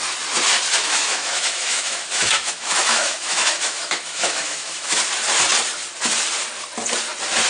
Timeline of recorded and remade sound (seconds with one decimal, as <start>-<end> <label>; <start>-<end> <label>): 0.0-0.8 recorded; 0.8-5.0 remade; 5.0-7.5 recorded